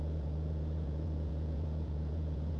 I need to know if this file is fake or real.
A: fake